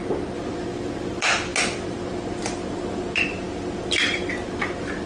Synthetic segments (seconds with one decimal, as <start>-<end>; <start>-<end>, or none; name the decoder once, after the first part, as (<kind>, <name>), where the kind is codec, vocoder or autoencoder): none